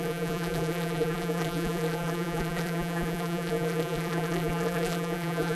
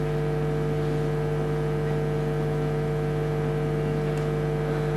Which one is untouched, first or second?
second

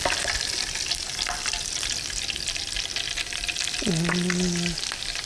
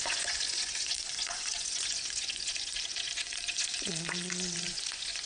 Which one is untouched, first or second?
first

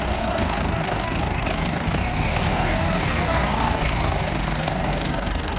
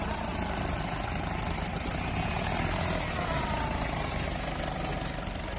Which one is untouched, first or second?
second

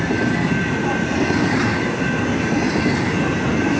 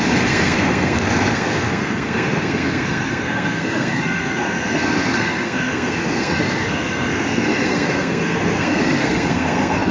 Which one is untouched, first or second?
first